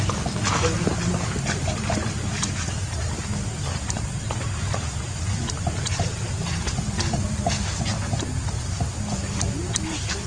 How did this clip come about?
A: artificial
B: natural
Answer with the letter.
B